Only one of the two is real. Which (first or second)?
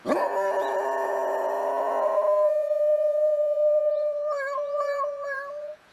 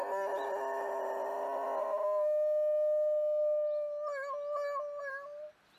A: second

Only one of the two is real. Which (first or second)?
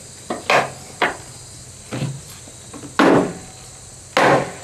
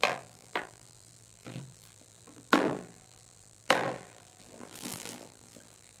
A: first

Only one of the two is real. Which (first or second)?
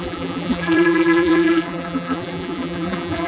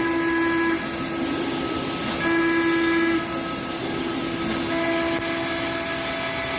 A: second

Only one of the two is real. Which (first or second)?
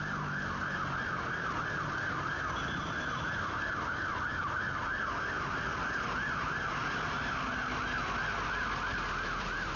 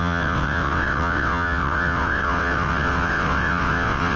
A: first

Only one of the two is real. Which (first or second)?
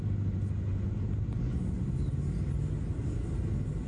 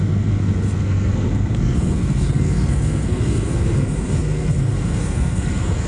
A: first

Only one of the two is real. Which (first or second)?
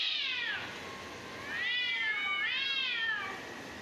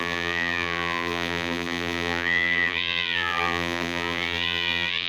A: first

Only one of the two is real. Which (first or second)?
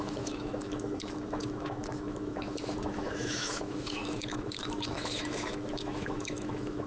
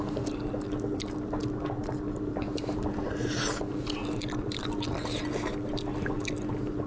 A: second